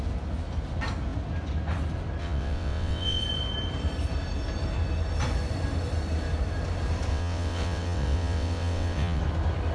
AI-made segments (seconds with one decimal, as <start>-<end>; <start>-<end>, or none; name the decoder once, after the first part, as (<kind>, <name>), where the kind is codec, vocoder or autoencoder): 2.2-3.2 (vocoder, WaveNeXt); 7.1-9.2